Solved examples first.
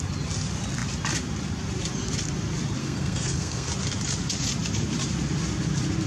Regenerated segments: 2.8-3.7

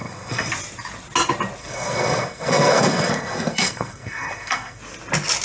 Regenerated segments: 0.0-0.5; 1.6-4.8

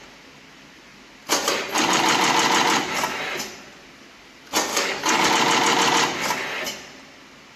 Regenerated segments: 4.7-5.3

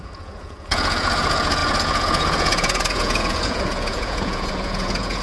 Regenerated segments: 0.0-5.2

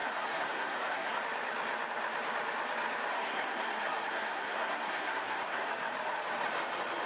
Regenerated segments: 0.0-1.2; 3.1-5.7

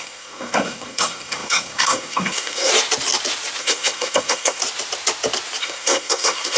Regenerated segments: 0.0-2.7; 3.6-4.6; 5.6-6.6